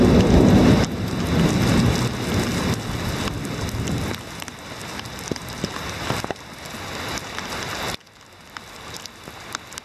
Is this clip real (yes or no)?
yes